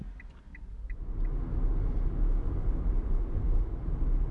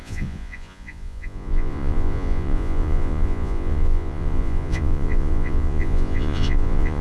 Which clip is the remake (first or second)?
second